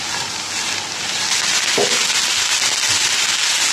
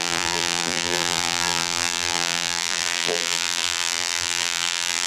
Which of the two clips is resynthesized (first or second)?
second